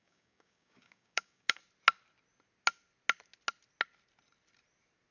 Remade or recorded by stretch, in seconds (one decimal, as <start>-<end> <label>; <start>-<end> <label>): 0.0-1.6 remade; 1.6-5.1 recorded